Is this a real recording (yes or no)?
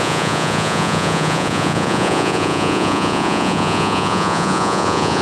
no